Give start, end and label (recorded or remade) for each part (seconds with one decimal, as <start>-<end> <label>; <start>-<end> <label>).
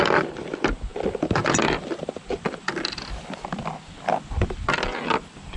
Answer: 0.0-5.6 remade